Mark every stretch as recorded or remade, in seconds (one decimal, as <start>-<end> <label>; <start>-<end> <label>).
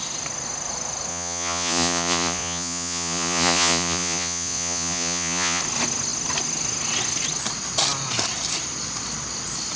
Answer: 0.0-1.1 recorded; 1.1-5.6 remade; 5.6-9.8 recorded